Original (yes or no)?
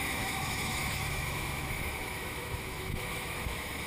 no